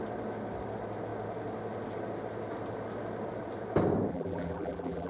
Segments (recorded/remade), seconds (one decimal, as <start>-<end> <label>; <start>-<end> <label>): 0.0-4.1 recorded; 4.1-5.1 remade